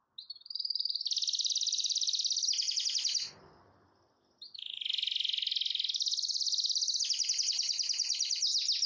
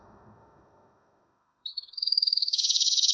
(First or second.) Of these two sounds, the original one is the first